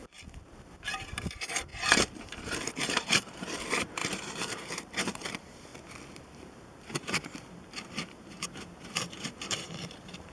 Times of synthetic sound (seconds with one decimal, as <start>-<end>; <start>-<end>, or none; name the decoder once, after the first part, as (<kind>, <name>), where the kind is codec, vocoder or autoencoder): 1.0-5.7 (vocoder, BigVGAN v2); 6.2-10.3